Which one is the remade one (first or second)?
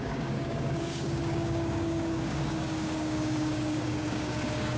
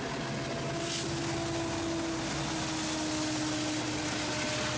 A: first